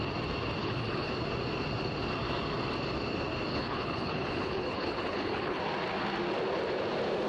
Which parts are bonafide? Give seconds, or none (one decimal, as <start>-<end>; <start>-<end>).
0.0-0.6; 1.1-3.5; 5.6-7.3